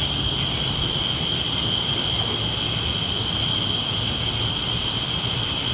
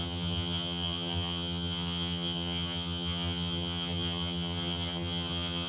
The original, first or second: first